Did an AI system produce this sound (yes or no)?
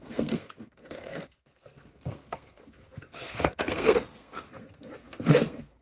yes